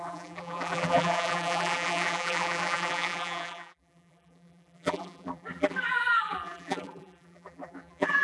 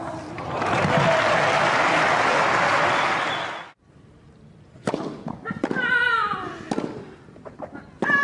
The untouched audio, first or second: second